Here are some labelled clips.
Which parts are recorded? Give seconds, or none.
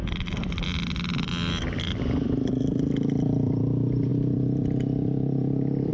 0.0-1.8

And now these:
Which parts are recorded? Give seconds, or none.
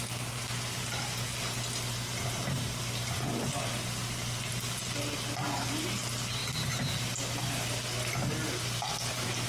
0.0-9.5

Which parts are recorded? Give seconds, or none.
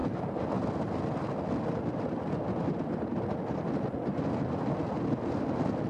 0.0-5.9